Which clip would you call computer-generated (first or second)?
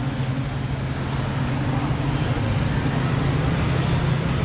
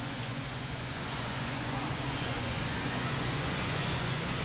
second